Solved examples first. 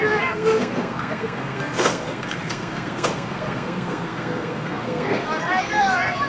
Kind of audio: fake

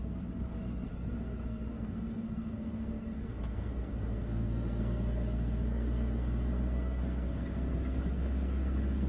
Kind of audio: fake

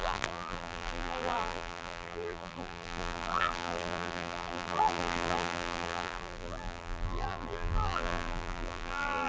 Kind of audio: fake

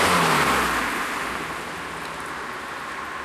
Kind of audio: real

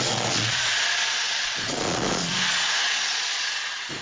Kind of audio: fake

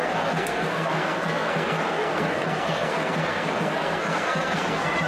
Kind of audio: fake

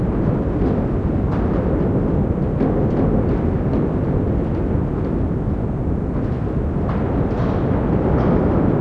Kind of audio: real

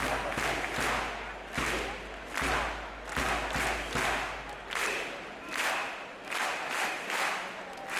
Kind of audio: real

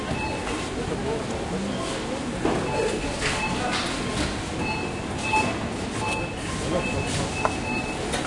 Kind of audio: real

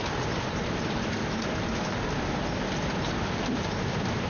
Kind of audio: real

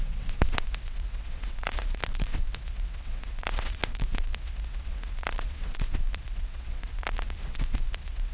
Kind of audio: fake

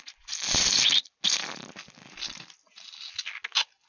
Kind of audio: real